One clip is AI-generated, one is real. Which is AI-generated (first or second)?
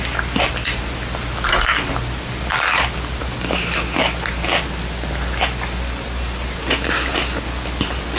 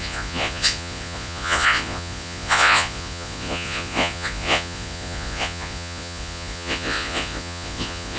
second